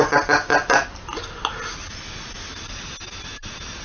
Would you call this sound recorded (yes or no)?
yes